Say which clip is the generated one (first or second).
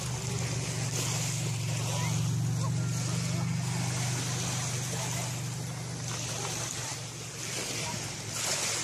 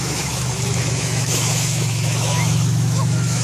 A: second